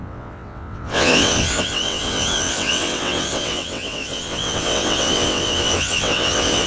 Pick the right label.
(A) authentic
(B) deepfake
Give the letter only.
B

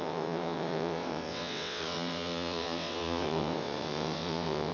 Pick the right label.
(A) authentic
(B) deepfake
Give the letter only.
B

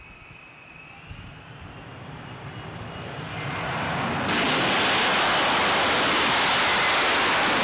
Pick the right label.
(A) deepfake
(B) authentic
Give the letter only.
B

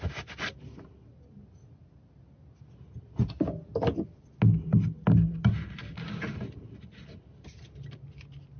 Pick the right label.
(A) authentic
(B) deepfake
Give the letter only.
A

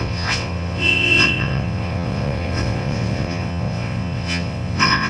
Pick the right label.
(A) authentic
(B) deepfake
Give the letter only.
B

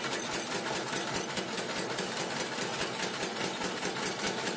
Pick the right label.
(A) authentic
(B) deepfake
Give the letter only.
A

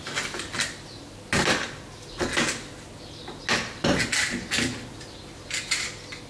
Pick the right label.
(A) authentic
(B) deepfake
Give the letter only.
A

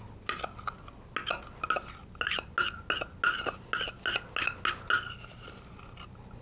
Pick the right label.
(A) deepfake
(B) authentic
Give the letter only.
B